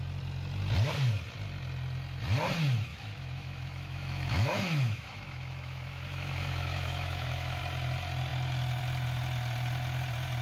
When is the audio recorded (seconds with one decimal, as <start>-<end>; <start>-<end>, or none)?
0.0-2.9; 7.6-10.4